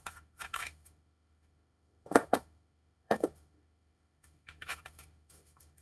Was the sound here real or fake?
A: fake